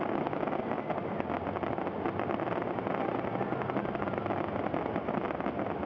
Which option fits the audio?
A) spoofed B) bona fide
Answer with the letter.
B